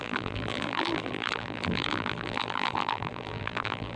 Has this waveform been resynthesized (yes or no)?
yes